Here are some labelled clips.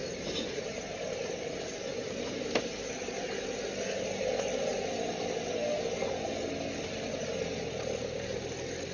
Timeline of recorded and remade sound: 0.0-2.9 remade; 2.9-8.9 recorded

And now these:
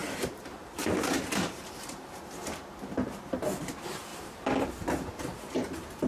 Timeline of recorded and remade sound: 0.0-2.3 remade; 2.3-4.1 recorded; 4.1-4.7 remade; 4.7-6.1 recorded

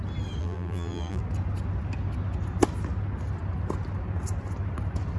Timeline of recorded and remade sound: 0.0-0.4 recorded; 0.4-1.2 remade; 1.2-5.2 recorded

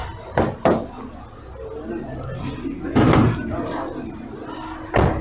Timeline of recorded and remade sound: 0.0-5.2 recorded